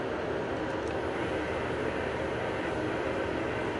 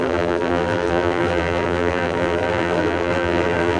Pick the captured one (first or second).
first